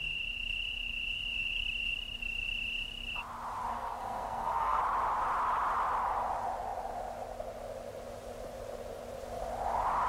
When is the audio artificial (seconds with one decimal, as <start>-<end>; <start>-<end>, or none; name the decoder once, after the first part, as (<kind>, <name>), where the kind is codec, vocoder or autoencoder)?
3.7-4.8 (codec, SNAC)